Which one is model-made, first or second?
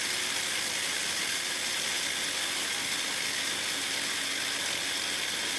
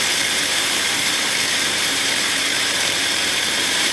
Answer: second